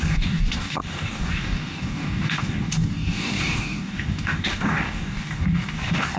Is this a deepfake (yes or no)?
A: yes